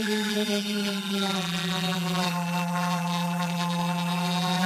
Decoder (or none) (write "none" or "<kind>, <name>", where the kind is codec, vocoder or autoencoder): vocoder, BigVGAN v2